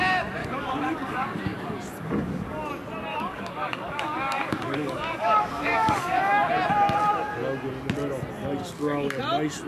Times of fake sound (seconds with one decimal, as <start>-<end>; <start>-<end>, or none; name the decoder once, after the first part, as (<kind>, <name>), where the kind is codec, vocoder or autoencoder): 0.4-2.7 (codec, DAC); 3.1-6.5; 8.6-9.2